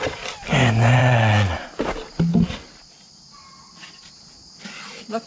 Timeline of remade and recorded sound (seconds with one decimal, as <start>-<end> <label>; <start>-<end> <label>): 0.0-1.0 recorded; 1.0-1.7 remade; 1.7-5.3 recorded

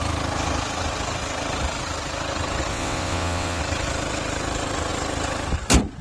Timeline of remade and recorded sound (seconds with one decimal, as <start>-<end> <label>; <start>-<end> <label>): 0.0-2.7 recorded; 2.7-3.6 remade; 3.6-6.0 recorded

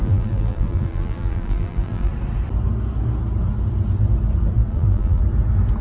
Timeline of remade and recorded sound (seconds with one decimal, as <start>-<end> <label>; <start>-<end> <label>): 0.0-2.1 remade; 2.1-4.7 recorded; 4.7-5.2 remade; 5.2-5.8 recorded